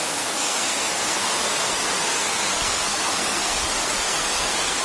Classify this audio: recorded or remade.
remade